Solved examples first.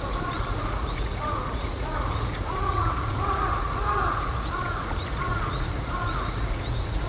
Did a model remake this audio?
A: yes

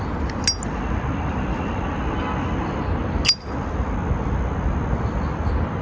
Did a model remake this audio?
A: no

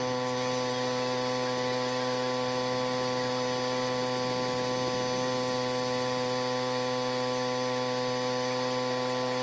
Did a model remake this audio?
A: no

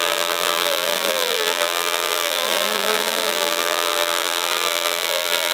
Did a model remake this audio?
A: yes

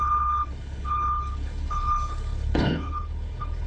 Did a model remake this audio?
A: yes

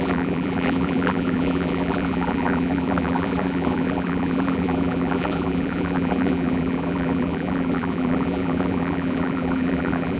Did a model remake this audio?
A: yes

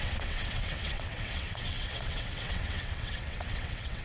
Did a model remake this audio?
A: yes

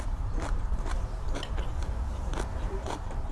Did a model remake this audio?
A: yes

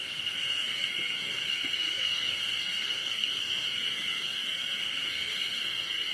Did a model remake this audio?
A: yes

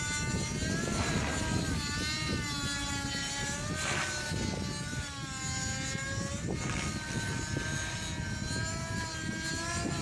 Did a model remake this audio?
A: no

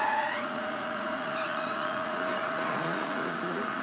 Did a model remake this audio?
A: yes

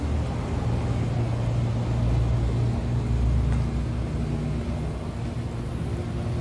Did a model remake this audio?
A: no